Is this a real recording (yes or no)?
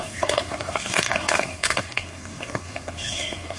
no